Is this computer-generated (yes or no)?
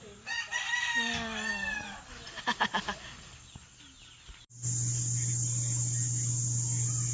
no